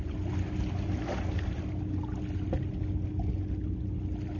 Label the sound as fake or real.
real